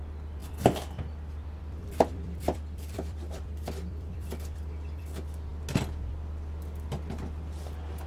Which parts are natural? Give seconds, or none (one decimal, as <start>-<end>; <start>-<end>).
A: 0.0-0.4; 5.0-8.1